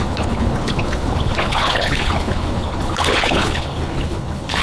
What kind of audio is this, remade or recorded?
remade